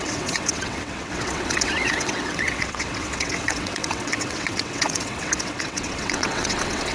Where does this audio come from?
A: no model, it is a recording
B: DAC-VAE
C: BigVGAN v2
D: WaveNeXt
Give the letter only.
D